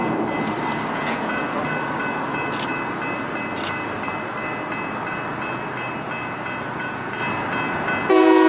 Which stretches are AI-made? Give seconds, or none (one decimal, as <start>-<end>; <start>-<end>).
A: 0.9-1.6; 6.7-7.2; 8.1-8.5